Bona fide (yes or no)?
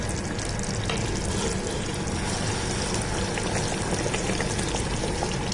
yes